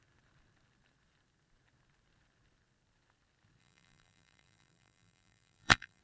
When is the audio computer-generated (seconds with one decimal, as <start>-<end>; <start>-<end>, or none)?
3.6-6.0